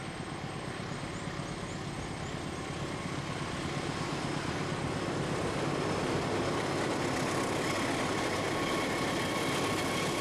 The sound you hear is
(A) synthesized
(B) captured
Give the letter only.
B